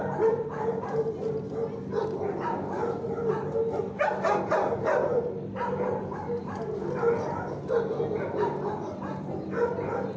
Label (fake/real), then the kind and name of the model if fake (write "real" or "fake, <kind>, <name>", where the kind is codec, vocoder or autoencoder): real